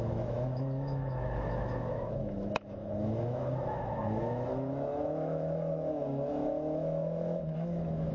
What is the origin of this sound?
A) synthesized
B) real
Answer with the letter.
A